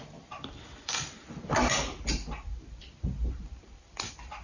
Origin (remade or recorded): remade